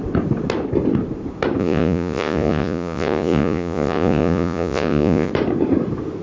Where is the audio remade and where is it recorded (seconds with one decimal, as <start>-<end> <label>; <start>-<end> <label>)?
0.0-1.6 recorded; 1.6-5.3 remade; 5.3-6.2 recorded